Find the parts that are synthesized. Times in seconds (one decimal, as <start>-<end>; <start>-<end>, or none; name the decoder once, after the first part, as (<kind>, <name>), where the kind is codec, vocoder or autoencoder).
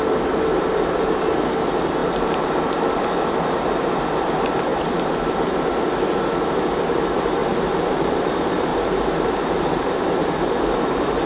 2.0-3.0 (vocoder, BigVGAN v2); 4.7-5.8; 7.4-8.2; 8.7-10.4